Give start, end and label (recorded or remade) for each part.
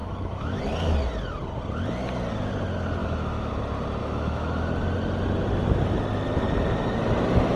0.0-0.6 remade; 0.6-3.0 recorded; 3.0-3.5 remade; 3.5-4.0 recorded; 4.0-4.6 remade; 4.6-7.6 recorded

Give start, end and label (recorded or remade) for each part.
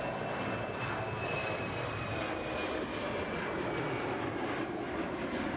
0.0-5.6 recorded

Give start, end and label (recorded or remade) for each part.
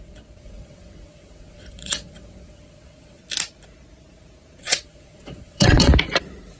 0.0-3.2 remade; 3.2-4.6 recorded; 4.6-5.9 remade; 5.9-6.6 recorded